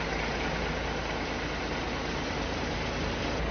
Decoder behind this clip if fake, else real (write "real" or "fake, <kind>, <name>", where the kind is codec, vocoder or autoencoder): real